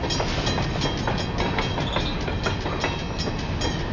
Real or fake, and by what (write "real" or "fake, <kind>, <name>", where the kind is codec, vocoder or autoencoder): real